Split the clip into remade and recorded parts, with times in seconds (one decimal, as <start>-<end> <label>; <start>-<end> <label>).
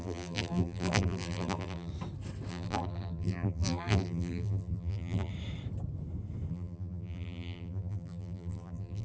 0.0-1.9 remade; 1.9-2.5 recorded; 2.5-5.3 remade; 5.3-6.5 recorded; 6.5-9.0 remade